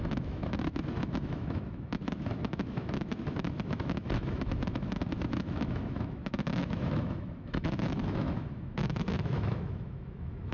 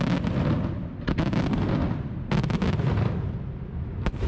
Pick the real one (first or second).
second